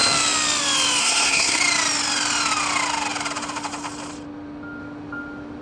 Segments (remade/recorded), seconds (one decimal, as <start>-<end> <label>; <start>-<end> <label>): 0.0-1.0 recorded; 1.0-1.6 remade; 1.6-5.6 recorded